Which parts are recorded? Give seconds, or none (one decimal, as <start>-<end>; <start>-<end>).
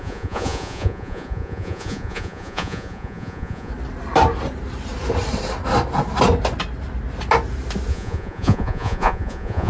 3.7-7.9